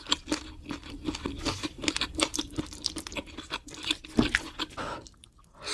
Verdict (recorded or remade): recorded